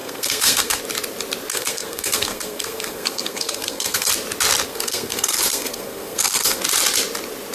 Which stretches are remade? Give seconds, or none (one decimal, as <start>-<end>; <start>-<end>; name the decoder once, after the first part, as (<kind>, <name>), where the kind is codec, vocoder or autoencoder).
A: 0.0-0.8 (codec, SNAC); 1.5-4.1; 4.7-6.6